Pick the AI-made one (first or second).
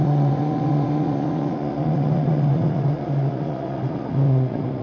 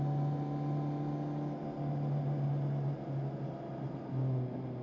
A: first